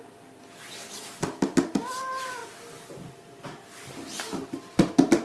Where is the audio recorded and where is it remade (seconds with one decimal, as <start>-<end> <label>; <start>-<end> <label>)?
0.0-5.2 recorded